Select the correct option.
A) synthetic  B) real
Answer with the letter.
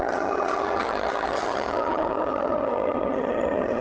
A